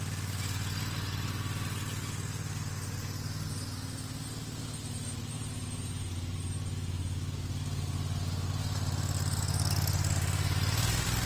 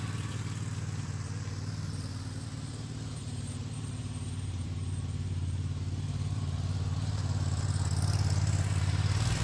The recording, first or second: first